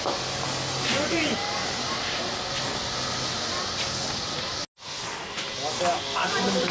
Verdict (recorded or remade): recorded